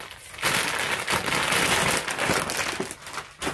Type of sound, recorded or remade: recorded